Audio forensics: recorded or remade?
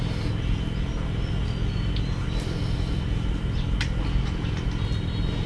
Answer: recorded